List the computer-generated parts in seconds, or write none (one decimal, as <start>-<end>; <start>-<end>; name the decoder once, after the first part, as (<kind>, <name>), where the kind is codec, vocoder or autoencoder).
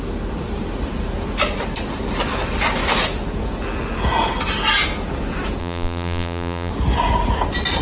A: 5.6-6.7 (vocoder, BigVGAN v2)